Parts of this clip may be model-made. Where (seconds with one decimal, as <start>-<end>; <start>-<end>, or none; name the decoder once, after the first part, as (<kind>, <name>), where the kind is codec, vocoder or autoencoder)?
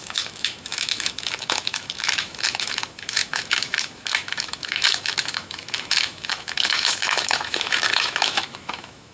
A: 0.0-9.1 (autoencoder, DAC-VAE)